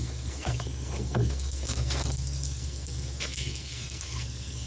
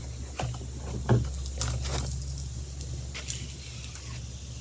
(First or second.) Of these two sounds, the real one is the second